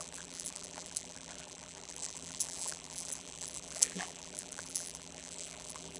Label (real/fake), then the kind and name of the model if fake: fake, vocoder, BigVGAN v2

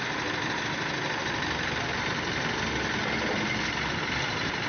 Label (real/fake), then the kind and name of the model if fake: real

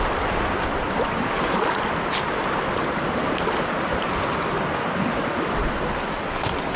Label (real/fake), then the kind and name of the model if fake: real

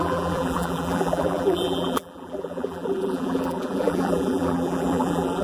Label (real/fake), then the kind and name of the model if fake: fake, vocoder, BigVGAN v2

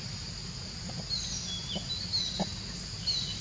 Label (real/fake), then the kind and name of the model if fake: real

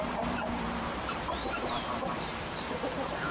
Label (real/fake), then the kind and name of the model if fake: fake, vocoder, BigVGAN v2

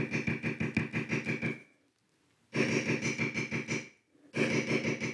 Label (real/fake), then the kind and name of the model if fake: real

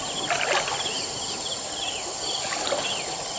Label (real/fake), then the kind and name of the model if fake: real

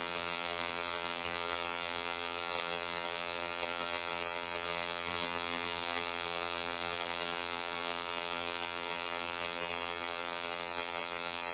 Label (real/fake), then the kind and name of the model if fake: fake, vocoder, BigVGAN v2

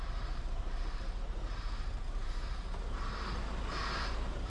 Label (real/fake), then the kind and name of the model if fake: fake, vocoder, BigVGAN v2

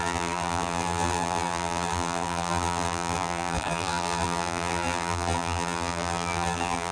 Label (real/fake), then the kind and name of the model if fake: fake, vocoder, BigVGAN v2